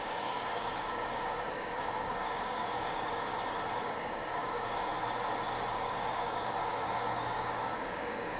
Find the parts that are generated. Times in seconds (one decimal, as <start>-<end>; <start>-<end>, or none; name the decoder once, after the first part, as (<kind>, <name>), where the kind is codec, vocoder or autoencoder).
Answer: 0.0-3.3 (codec, DAC); 3.8-4.9; 5.7-8.4